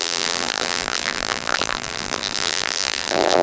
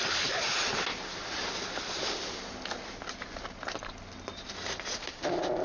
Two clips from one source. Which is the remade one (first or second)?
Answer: first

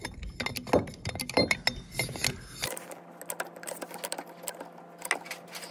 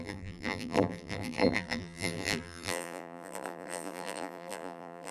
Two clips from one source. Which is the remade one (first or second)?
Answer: second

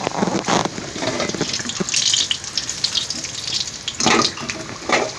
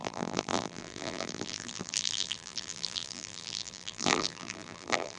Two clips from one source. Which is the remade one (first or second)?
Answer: second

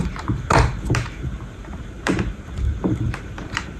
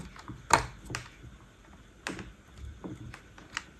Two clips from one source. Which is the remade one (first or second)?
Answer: first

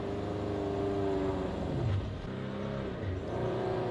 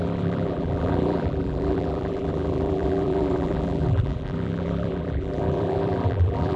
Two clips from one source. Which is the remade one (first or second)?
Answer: second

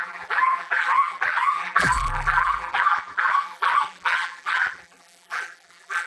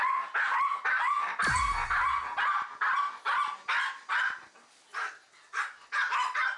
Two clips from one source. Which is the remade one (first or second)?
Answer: first